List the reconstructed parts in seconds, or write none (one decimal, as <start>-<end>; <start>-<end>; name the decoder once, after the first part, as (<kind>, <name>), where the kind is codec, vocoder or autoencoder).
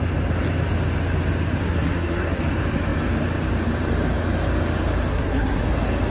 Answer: 1.6-2.4 (codec, SNAC); 5.1-5.6